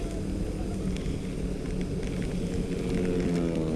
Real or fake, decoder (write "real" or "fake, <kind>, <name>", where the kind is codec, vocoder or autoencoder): real